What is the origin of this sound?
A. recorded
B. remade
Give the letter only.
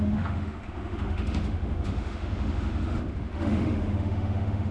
B